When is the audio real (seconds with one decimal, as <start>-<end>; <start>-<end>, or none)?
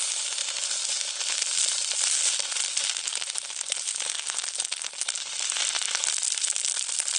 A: 0.0-7.2